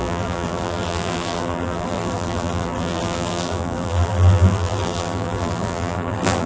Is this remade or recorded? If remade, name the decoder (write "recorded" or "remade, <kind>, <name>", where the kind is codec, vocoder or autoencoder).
remade, vocoder, BigVGAN v2